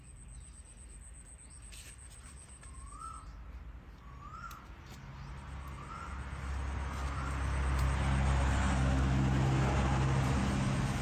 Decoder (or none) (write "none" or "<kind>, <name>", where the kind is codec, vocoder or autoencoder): none